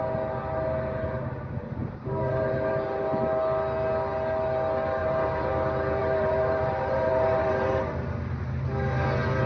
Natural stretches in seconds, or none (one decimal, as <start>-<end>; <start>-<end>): 0.0-1.8; 2.7-5.0; 5.5-6.0; 7.8-9.5